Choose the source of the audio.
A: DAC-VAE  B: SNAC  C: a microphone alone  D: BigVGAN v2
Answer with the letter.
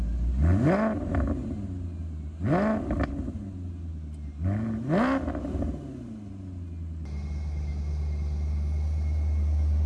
C